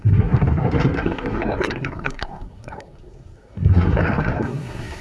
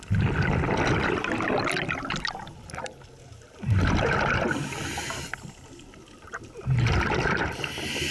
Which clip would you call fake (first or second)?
first